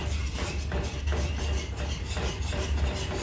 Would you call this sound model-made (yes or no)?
no